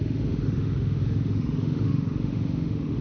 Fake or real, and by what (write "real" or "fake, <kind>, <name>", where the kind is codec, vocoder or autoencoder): fake, autoencoder, DAC-VAE